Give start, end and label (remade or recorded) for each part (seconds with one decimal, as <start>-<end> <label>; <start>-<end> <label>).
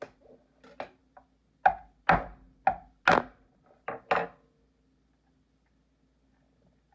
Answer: 0.0-6.9 recorded